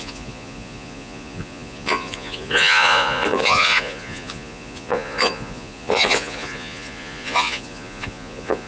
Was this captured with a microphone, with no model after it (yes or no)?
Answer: no